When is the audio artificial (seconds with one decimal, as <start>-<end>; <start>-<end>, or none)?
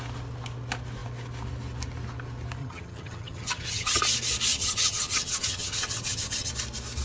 2.6-4.0; 4.5-6.5